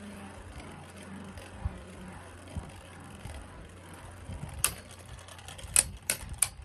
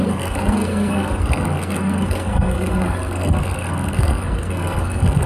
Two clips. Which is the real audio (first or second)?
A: first